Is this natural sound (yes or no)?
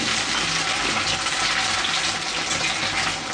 yes